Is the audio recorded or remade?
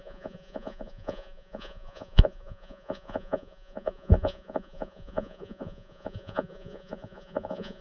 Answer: remade